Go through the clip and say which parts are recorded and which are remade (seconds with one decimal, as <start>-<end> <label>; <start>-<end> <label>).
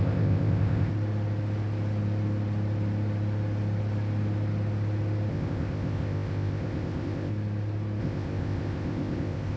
0.0-0.9 remade; 0.9-5.3 recorded; 5.3-7.3 remade; 7.3-8.0 recorded; 8.0-9.6 remade